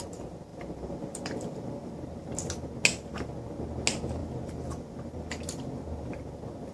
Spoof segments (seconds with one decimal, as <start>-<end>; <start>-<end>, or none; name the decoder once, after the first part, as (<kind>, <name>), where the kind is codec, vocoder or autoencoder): 0.5-1.9 (vocoder, BigVGAN v2); 4.2-5.8